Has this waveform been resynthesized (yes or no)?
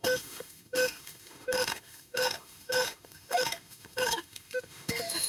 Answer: yes